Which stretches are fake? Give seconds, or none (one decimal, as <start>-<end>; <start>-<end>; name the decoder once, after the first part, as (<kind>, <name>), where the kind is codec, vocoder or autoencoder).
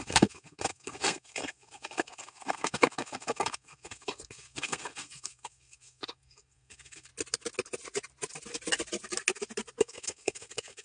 0.0-7.1 (codec, SNAC); 9.8-10.8